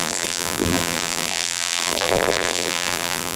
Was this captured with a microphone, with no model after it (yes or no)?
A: no